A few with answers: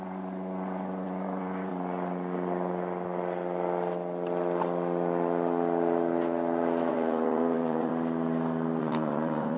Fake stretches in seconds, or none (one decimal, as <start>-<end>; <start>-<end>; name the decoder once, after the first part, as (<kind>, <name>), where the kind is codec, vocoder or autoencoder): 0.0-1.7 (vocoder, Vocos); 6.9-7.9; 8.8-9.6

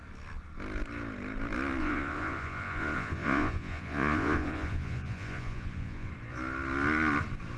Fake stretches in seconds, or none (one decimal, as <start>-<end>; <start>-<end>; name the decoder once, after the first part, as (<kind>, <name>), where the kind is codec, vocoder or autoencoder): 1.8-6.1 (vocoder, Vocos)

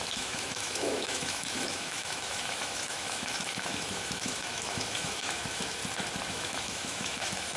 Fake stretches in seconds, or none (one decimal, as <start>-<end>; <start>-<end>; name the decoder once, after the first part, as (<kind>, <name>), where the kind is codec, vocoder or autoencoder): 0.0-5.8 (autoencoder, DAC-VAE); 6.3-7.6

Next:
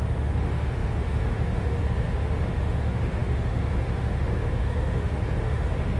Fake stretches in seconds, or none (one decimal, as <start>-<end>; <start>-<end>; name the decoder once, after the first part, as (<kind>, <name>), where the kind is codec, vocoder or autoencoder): 0.0-6.0 (autoencoder, DAC-VAE)

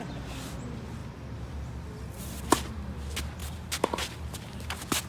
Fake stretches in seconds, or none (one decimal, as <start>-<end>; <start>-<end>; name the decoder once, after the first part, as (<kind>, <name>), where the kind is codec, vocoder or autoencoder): none

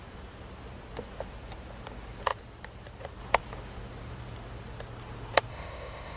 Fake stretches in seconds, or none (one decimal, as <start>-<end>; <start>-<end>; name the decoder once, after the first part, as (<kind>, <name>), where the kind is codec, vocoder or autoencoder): 5.5-6.2 (codec, ZipCodec)

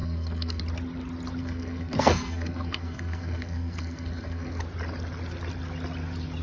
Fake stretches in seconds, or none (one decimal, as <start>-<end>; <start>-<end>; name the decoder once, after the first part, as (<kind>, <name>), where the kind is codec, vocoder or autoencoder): 0.0-0.6 (codec, SNAC); 1.4-4.6